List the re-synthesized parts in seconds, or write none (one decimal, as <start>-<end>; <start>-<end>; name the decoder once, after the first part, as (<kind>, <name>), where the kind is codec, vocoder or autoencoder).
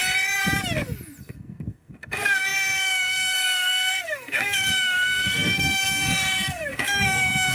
1.2-7.5 (codec, SNAC)